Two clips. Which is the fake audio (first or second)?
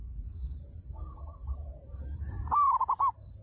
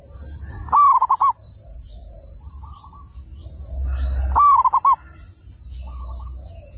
first